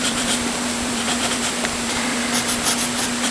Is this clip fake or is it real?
fake